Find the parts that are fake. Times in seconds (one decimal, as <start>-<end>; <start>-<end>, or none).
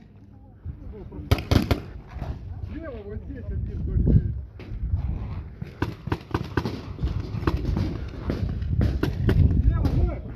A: none